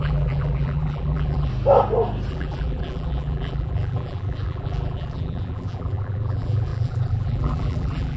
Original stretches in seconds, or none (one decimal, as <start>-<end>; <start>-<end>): 1.5-2.3